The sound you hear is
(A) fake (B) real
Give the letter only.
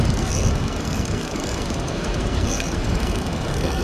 A